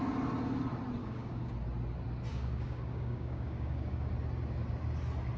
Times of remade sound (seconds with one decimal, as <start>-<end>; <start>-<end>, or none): 1.0-1.5; 2.3-4.1